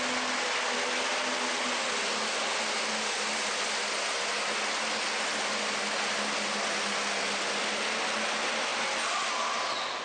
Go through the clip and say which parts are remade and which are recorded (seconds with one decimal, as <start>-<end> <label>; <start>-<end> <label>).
0.0-10.0 recorded